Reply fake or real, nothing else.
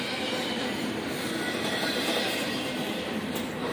real